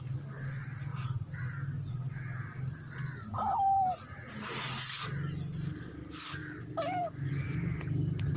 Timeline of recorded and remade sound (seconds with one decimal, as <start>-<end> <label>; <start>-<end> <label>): 0.0-8.4 recorded